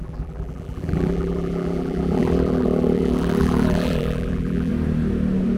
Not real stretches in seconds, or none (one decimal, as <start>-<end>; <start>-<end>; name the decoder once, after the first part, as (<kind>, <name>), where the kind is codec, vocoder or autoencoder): 0.0-4.7 (vocoder, BigVGAN v2)